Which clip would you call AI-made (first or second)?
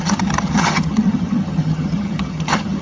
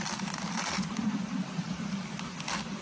first